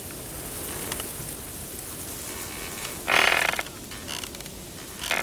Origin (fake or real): real